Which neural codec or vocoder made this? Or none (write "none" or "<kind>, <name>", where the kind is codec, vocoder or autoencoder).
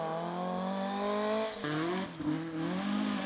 none